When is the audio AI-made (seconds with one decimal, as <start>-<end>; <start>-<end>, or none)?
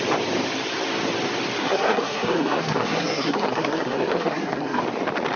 1.6-4.8